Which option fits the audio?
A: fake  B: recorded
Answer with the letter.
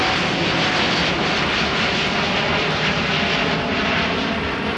B